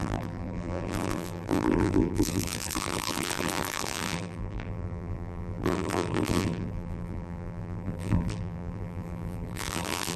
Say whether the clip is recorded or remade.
remade